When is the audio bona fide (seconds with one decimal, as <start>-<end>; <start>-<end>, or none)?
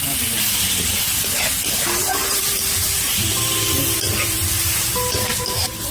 0.0-2.2